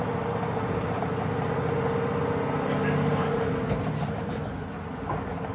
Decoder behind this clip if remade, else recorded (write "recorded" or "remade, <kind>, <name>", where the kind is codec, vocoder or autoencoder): recorded